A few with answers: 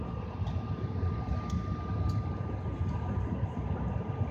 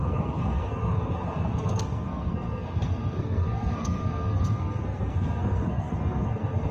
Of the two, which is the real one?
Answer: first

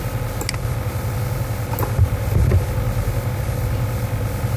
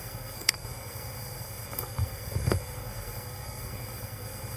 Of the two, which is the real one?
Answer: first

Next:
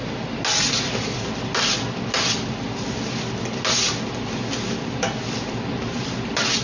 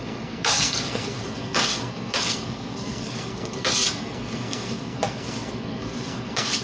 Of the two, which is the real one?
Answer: first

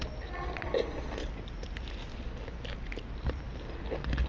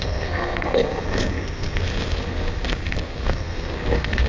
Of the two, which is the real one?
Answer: first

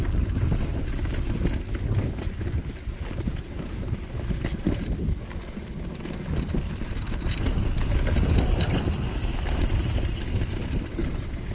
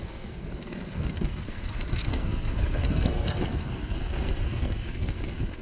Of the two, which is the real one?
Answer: first